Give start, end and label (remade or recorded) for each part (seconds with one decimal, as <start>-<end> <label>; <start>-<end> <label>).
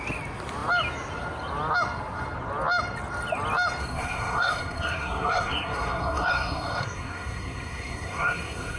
0.0-3.8 recorded; 3.8-8.8 remade